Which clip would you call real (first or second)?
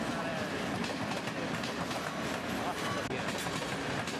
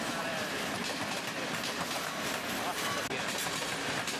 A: first